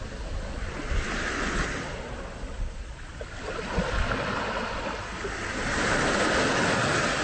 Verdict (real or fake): real